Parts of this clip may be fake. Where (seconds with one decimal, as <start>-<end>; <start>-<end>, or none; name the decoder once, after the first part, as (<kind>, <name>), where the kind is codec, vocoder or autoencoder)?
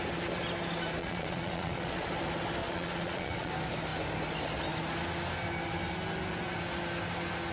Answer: 1.0-2.1 (vocoder, Vocos); 2.6-3.5